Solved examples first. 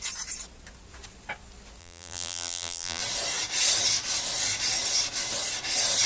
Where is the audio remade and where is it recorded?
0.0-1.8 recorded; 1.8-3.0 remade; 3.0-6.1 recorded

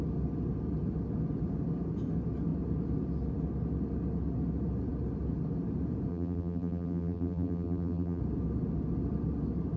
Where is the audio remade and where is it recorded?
0.0-6.1 recorded; 6.1-8.2 remade; 8.2-9.8 recorded